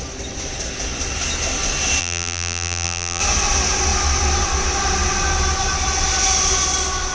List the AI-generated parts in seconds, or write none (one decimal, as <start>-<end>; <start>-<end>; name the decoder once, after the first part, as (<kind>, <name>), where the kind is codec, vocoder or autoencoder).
2.0-3.2 (vocoder, BigVGAN v2)